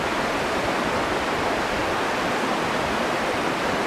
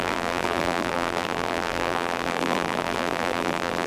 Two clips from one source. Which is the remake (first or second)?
second